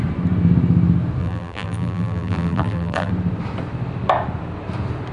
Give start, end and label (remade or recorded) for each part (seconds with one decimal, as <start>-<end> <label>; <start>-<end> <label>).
0.0-1.2 recorded; 1.2-3.1 remade; 3.1-5.1 recorded

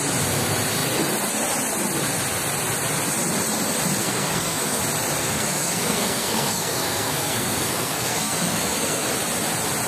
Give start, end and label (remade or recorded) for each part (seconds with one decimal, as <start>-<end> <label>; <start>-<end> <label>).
0.0-4.0 recorded; 4.0-4.8 remade; 4.8-5.2 recorded; 5.2-9.1 remade; 9.1-9.9 recorded

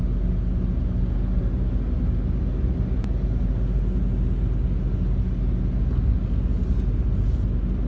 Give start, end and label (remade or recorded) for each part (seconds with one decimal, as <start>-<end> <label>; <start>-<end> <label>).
0.0-7.9 recorded

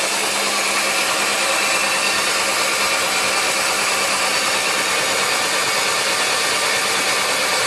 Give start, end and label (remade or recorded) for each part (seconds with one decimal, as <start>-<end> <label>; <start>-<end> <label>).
0.0-7.7 recorded

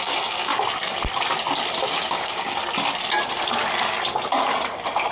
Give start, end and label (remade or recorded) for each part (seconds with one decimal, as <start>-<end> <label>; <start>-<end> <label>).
0.0-0.5 remade; 0.5-1.9 recorded; 1.9-2.6 remade; 2.6-5.1 recorded

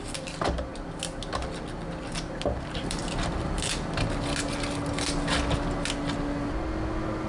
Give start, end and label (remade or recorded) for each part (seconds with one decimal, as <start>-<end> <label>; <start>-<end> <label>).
0.0-0.7 remade; 0.7-2.1 recorded; 2.1-3.0 remade; 3.0-7.3 recorded

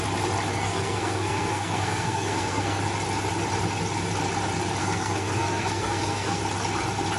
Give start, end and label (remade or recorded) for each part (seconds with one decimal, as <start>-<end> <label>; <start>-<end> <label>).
0.0-0.5 recorded; 0.5-2.8 remade; 2.8-4.8 recorded; 4.8-6.4 remade; 6.4-7.2 recorded